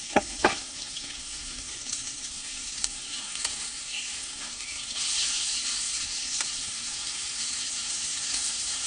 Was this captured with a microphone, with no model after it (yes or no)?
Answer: no